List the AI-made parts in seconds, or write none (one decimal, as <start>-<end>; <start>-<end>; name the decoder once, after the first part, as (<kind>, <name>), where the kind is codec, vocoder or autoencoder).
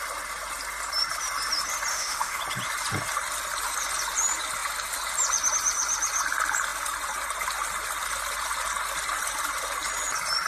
1.9-2.4 (autoencoder, DAC-VAE)